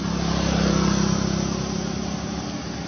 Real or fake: real